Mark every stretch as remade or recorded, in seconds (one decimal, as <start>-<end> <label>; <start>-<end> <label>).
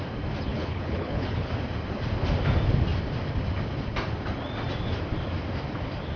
0.0-0.5 recorded; 0.5-1.5 remade; 1.5-6.2 recorded